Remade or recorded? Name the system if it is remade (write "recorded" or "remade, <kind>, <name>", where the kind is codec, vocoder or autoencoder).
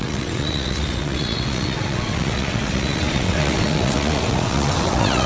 remade, vocoder, WaveNeXt